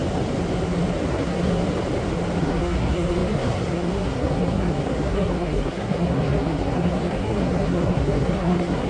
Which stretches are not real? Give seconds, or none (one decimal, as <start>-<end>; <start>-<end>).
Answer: 1.1-1.6; 2.4-8.9